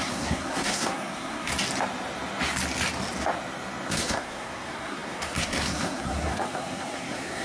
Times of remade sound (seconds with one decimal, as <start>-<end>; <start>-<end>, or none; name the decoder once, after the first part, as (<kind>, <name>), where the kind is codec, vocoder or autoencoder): 0.0-1.5 (codec, SNAC); 3.9-7.4